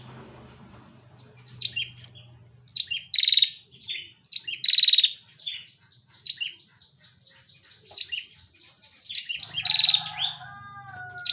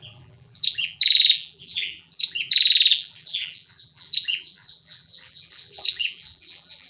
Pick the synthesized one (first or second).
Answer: second